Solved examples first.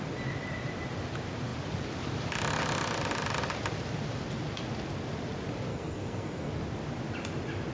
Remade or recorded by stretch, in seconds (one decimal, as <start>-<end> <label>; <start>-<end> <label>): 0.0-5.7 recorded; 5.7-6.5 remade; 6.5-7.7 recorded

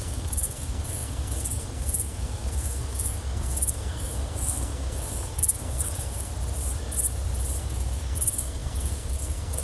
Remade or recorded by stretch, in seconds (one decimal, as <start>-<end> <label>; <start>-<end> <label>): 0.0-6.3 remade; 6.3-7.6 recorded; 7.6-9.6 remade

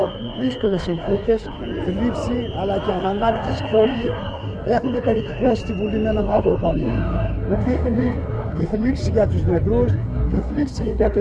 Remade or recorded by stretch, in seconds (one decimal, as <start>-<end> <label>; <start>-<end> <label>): 0.0-1.6 remade; 1.6-2.9 recorded; 2.9-5.6 remade; 5.6-6.2 recorded; 6.2-9.0 remade; 9.0-9.9 recorded; 9.9-11.2 remade